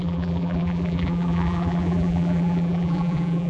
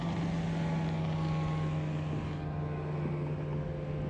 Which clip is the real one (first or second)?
second